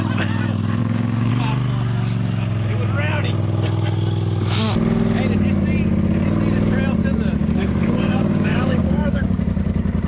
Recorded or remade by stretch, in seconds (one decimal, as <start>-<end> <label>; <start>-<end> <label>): 0.0-0.8 recorded; 0.8-1.3 remade; 1.3-7.4 recorded; 7.4-9.4 remade; 9.4-10.1 recorded